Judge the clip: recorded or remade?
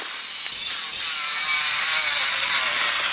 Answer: recorded